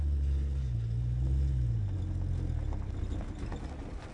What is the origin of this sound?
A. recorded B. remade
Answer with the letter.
A